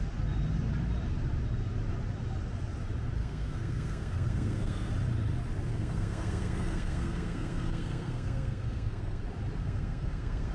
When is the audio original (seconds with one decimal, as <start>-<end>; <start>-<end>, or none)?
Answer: 0.0-3.2; 4.9-5.7; 9.2-9.6